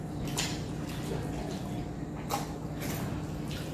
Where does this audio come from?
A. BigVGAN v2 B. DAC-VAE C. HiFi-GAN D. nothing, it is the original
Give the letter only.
D